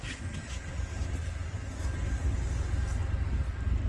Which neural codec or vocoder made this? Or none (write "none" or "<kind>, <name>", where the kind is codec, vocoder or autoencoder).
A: none